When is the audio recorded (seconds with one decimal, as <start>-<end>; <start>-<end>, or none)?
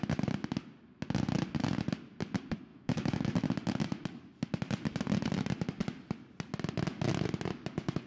0.0-2.7; 3.3-8.1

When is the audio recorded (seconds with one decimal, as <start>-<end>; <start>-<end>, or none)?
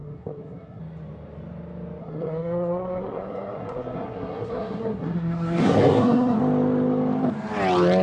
0.8-2.0; 6.4-8.0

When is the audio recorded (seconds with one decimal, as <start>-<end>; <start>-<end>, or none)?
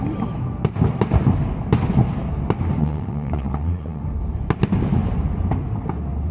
0.0-2.8; 4.0-6.3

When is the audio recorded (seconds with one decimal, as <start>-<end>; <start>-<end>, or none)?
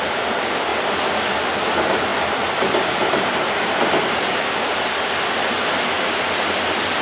0.0-7.0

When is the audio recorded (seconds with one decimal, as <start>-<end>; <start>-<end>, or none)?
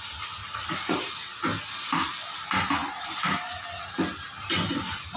0.0-0.4; 1.2-5.2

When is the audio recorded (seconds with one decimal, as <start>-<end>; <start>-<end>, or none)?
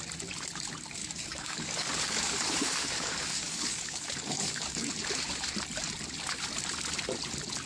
0.0-1.0; 4.9-7.7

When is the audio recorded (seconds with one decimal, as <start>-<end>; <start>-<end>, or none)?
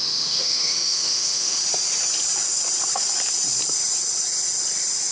1.6-5.1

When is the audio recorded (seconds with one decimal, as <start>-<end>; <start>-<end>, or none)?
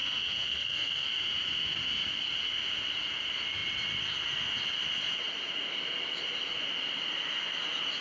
1.2-8.0